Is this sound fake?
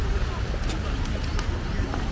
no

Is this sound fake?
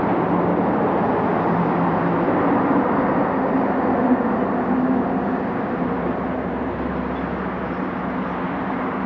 no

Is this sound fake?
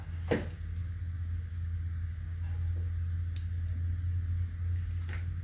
no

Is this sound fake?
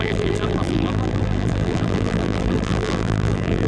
yes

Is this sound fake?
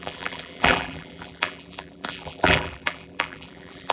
yes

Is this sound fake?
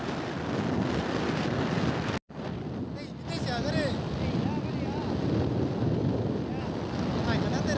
no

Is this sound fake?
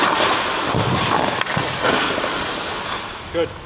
no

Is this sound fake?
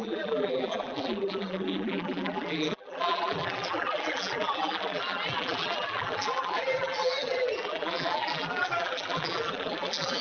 yes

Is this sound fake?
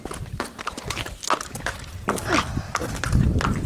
no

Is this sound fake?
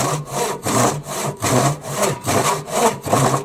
yes